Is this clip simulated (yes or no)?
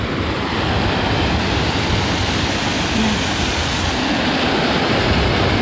no